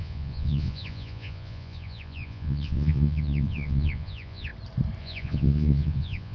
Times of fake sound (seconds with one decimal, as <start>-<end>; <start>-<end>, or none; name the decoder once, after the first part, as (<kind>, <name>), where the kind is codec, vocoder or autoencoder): 0.0-4.5 (vocoder, Vocos); 5.0-6.3